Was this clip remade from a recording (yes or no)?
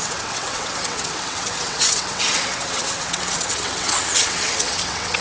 yes